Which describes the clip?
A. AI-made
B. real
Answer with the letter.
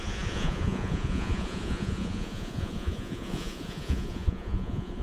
A